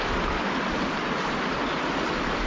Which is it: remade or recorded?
recorded